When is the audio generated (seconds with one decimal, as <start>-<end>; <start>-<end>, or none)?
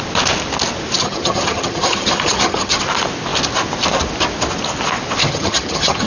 1.0-2.8; 5.2-6.1